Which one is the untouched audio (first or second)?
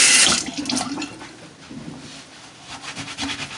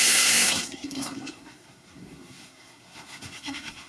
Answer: first